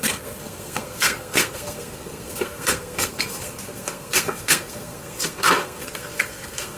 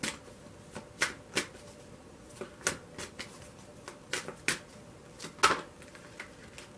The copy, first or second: first